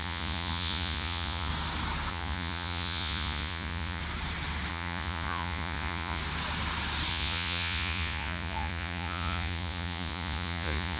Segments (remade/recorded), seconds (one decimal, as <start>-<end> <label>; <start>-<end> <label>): 0.0-1.5 remade; 1.5-2.1 recorded; 2.1-4.0 remade; 4.0-4.7 recorded; 4.7-6.2 remade; 6.2-7.1 recorded; 7.1-11.0 remade